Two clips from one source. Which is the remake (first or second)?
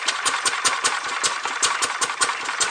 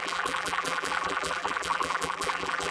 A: second